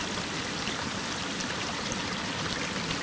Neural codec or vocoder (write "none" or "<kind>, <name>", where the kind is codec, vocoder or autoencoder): none